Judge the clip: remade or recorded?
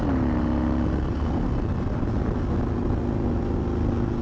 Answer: recorded